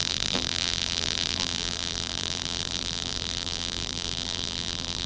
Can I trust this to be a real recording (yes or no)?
no